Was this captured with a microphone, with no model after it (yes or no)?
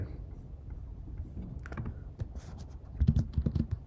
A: yes